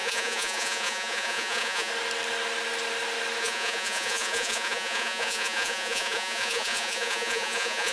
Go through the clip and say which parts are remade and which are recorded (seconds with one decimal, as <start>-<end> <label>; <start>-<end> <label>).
0.0-1.9 remade; 1.9-3.4 recorded; 3.4-7.9 remade